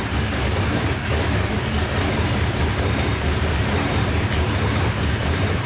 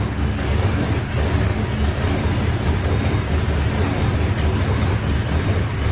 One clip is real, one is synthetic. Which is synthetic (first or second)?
first